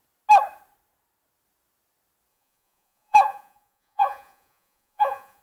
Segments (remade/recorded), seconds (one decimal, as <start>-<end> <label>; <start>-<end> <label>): 0.0-2.3 recorded; 2.3-5.4 remade